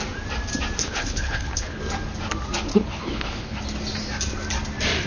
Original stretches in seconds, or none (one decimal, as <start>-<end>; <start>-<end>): 0.0-0.8; 1.8-2.7; 3.6-5.1